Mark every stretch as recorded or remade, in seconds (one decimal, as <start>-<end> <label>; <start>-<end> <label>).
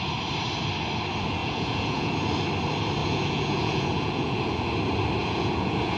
0.0-1.4 recorded; 1.4-2.1 remade; 2.1-3.0 recorded; 3.0-4.7 remade; 4.7-5.2 recorded; 5.2-6.0 remade